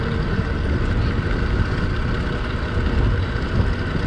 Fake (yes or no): no